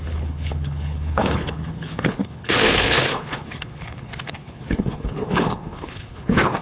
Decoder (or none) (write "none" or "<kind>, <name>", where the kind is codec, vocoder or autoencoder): codec, HILCodec